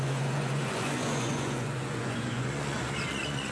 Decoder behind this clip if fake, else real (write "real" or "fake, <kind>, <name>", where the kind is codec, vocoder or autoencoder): fake, vocoder, Vocos